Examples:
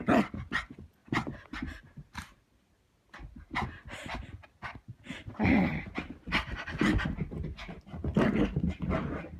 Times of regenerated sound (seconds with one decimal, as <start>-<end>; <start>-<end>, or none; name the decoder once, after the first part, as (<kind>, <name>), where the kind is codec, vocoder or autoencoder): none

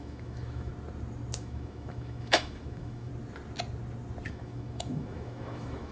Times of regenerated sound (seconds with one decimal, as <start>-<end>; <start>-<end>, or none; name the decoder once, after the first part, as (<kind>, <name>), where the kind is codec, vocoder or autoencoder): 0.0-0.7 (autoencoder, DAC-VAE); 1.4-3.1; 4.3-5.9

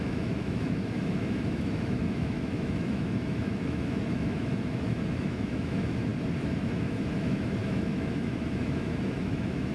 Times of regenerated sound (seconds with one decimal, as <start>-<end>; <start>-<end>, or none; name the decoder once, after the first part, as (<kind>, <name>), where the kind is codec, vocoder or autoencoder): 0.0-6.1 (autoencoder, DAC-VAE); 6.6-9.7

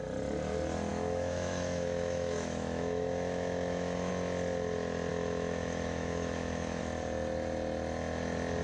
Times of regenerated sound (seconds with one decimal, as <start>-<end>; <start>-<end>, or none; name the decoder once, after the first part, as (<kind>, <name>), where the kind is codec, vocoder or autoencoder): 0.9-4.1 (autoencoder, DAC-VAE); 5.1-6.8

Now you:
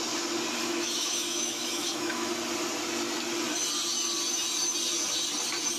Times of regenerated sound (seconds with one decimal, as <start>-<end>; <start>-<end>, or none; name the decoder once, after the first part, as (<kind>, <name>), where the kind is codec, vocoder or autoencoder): 0.6-2.3 (autoencoder, DAC-VAE)